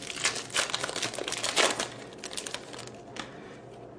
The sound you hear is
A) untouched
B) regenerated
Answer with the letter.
A